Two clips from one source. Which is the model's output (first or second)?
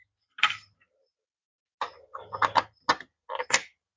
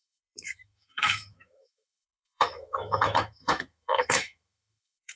second